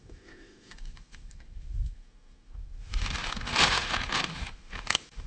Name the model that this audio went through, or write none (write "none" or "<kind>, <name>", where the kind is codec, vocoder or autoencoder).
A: autoencoder, DAC-VAE